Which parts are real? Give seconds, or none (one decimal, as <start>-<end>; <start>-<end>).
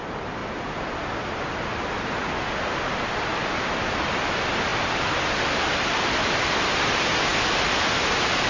0.0-8.5